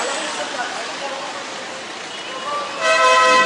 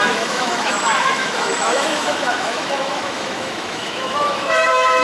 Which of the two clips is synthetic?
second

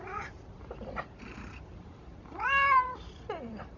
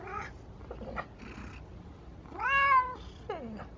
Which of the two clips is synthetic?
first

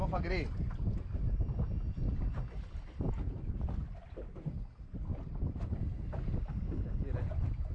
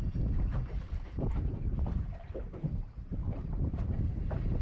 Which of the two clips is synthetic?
second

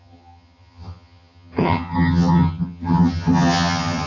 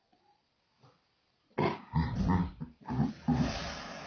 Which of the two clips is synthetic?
first